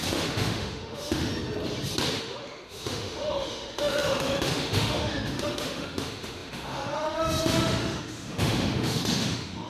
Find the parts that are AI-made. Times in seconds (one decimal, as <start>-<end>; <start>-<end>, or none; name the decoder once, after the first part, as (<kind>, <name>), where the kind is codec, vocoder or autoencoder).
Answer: 0.0-1.3 (autoencoder, DAC-VAE); 2.2-9.7